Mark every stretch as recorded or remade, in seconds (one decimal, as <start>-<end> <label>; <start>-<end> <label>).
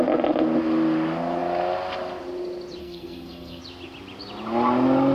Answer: 0.0-2.8 recorded; 2.8-3.6 remade; 3.6-5.1 recorded